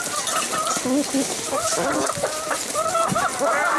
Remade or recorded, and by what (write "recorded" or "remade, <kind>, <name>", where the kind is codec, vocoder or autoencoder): recorded